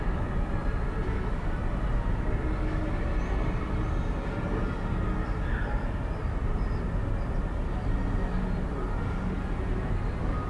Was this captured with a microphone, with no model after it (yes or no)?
yes